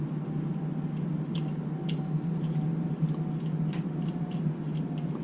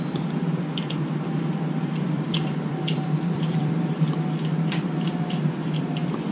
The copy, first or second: second